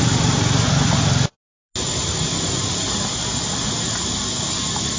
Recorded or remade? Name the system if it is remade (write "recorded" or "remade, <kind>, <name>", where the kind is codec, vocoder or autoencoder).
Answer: recorded